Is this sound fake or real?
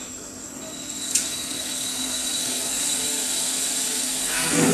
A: fake